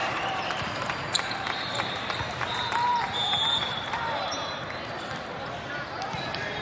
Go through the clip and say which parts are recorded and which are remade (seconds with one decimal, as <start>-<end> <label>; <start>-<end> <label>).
0.0-4.0 remade; 4.0-6.6 recorded